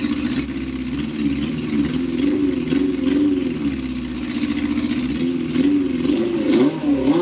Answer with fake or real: real